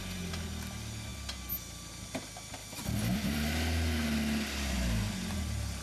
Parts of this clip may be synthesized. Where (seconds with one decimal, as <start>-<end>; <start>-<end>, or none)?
2.6-3.5